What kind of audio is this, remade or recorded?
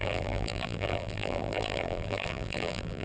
remade